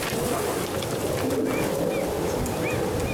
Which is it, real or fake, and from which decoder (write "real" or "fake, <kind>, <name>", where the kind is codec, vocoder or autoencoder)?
real